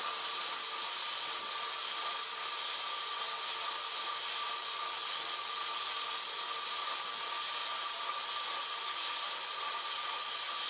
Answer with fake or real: real